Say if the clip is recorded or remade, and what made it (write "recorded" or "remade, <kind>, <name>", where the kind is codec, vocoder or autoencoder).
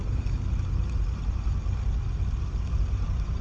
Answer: recorded